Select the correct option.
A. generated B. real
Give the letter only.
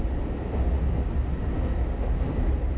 B